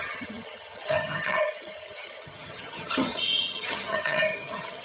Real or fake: fake